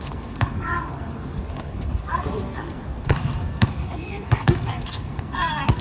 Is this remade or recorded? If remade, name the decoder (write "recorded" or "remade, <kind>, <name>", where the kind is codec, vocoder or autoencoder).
remade, codec, SNAC